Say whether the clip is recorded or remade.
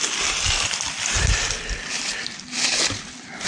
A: recorded